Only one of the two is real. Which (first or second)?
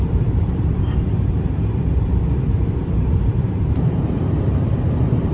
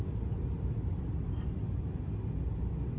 second